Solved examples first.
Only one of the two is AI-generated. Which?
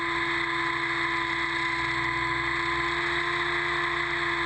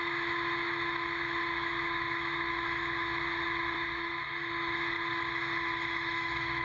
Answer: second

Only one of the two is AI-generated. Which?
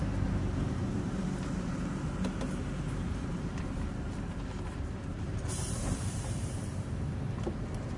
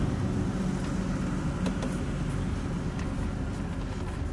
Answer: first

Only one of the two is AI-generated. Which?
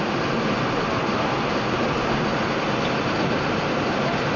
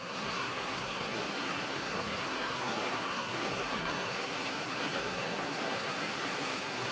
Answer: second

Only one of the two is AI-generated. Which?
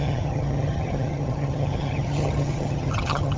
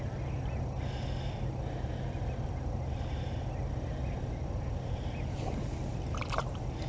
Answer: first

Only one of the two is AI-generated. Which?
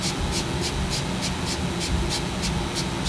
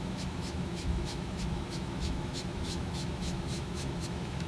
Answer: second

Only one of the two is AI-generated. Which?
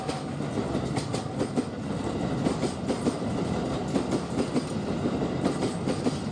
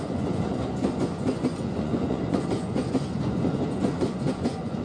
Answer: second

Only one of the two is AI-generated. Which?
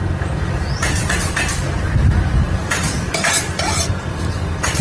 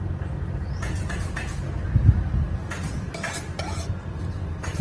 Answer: first